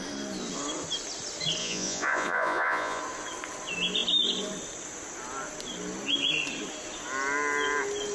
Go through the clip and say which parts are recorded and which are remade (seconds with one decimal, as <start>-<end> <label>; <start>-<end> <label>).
0.0-1.6 recorded; 1.6-3.0 remade; 3.0-8.1 recorded

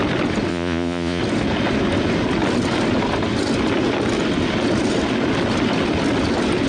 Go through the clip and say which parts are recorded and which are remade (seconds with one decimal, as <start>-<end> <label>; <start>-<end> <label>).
0.0-0.5 recorded; 0.5-1.2 remade; 1.2-6.7 recorded

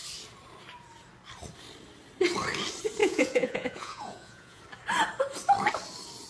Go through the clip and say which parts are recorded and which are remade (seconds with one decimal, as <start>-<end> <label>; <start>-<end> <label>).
0.0-3.0 recorded; 3.0-4.6 remade; 4.6-6.3 recorded

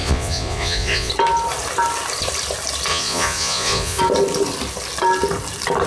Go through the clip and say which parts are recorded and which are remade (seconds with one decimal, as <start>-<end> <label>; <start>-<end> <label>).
0.0-1.1 remade; 1.1-2.9 recorded; 2.9-4.0 remade; 4.0-5.9 recorded

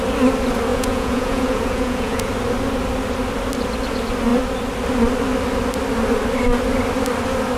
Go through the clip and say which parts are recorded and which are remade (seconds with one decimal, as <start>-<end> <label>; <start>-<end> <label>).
0.0-0.7 recorded; 0.7-2.3 remade; 2.3-7.6 recorded

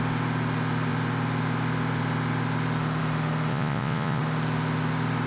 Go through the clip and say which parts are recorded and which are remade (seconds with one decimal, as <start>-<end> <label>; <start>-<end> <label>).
0.0-3.5 recorded; 3.5-4.2 remade; 4.2-5.3 recorded

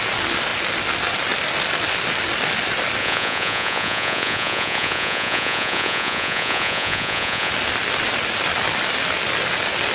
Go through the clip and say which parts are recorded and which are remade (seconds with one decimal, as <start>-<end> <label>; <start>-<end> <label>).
0.0-3.0 recorded; 3.0-7.5 remade; 7.5-9.9 recorded

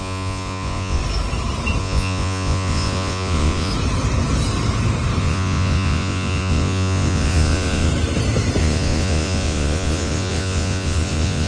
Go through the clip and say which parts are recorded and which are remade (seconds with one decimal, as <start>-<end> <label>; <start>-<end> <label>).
0.0-1.0 remade; 1.0-1.8 recorded; 1.8-3.7 remade; 3.7-5.2 recorded; 5.2-7.9 remade; 7.9-8.6 recorded; 8.6-11.5 remade